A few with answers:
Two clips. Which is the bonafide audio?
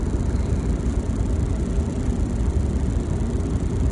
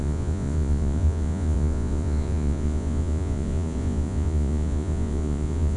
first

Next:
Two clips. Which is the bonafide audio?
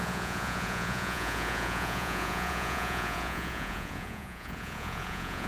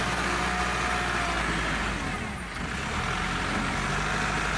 second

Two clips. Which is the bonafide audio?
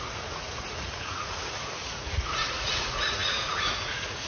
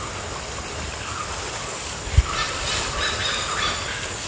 second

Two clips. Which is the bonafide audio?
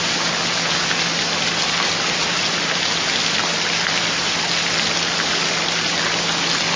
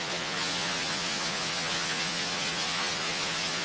first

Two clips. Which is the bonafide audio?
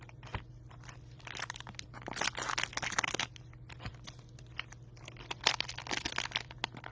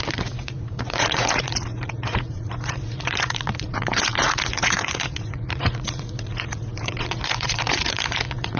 first